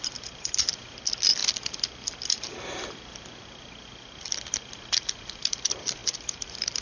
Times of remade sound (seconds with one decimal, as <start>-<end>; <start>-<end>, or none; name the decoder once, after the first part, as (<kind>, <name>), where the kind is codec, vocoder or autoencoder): 6.0-6.8 (vocoder, BigVGAN v2)